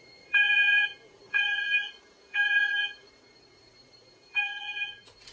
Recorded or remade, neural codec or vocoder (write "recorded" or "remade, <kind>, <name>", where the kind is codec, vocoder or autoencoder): remade, vocoder, Vocos